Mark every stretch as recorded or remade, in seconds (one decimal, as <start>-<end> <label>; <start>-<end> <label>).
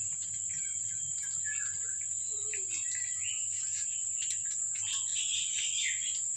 0.0-6.4 recorded